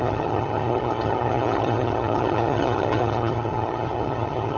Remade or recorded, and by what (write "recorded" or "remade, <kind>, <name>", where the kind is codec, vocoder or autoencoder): remade, vocoder, HiFi-GAN